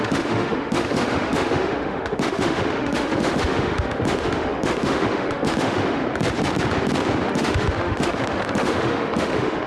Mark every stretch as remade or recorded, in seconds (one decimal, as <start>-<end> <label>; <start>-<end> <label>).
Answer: 0.0-6.0 remade; 6.0-7.3 recorded; 7.3-9.7 remade